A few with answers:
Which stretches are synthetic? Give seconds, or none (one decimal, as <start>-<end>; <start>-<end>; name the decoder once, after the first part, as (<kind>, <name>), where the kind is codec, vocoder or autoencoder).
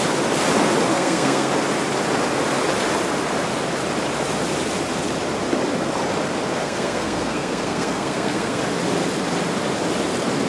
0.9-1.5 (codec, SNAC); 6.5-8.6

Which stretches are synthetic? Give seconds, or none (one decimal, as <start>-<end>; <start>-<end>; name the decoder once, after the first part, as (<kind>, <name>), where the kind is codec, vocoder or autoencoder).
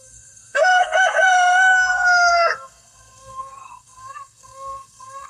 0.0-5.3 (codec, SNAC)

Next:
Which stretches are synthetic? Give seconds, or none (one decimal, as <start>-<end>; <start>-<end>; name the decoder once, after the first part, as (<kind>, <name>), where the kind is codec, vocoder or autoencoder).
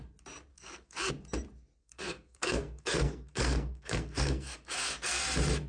0.5-1.1 (codec, SNAC); 1.8-5.2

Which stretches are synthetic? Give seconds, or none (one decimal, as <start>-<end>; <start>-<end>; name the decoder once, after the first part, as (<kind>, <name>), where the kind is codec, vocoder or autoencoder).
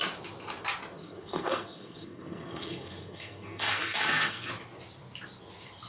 1.0-4.5 (codec, SNAC)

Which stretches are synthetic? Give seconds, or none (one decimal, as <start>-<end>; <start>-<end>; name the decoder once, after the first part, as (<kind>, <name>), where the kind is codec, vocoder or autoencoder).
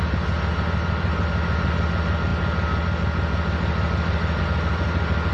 none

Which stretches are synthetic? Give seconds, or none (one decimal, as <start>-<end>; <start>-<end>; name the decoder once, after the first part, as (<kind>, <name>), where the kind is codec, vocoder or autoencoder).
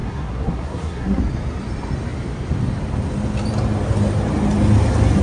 0.0-1.2 (codec, SNAC)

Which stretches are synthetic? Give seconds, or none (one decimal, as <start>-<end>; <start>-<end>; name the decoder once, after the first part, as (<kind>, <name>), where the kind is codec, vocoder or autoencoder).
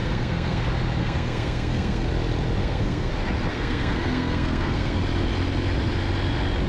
0.0-0.6 (codec, SNAC); 1.0-2.1; 2.6-3.1; 3.5-5.0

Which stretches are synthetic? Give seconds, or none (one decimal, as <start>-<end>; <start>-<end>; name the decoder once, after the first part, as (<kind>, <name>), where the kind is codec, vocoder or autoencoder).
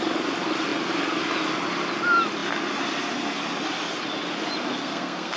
4.8-5.4 (codec, SNAC)